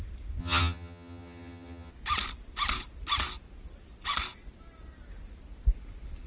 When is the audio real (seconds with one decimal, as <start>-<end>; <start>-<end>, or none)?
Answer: 0.0-0.4; 1.9-6.3